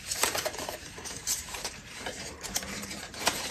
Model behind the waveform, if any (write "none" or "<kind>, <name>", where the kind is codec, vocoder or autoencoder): vocoder, BigVGAN v2